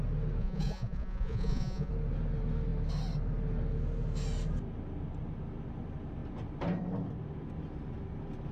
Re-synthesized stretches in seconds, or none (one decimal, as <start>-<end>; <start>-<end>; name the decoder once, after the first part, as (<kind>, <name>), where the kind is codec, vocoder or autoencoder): 0.4-1.9 (vocoder, Vocos)